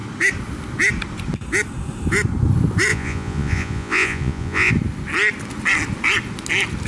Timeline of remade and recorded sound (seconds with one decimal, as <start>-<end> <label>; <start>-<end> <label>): 0.0-2.9 recorded; 2.9-4.7 remade; 4.7-6.9 recorded